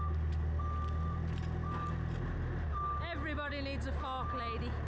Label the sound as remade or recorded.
recorded